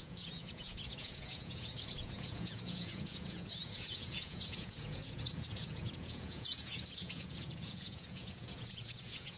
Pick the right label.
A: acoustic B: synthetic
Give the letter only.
B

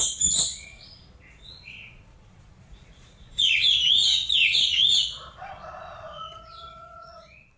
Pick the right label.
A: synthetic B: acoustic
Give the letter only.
A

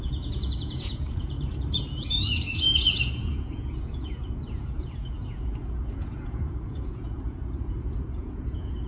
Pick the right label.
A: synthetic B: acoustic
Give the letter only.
A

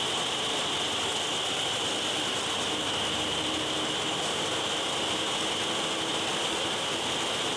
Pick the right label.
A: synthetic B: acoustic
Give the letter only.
B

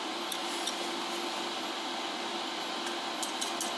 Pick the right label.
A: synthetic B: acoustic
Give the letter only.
B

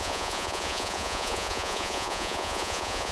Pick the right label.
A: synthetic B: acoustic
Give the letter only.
A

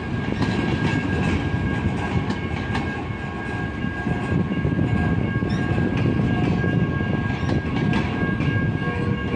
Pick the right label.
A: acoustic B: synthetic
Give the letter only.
A